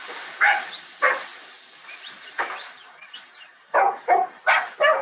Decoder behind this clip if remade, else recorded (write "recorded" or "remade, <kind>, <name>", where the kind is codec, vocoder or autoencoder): recorded